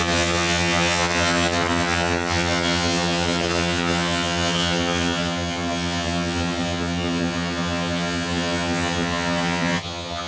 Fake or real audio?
fake